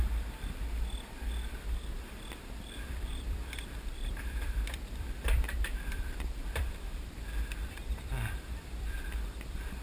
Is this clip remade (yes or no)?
yes